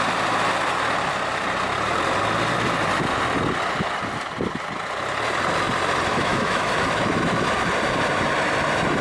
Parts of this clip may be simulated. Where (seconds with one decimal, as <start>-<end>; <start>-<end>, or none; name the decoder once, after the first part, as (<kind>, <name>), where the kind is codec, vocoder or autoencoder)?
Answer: 6.1-6.7 (autoencoder, DAC-VAE)